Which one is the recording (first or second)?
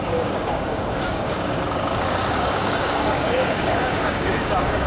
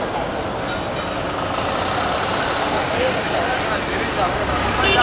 second